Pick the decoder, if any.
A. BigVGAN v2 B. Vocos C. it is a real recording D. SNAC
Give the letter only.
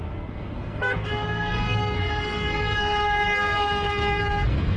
D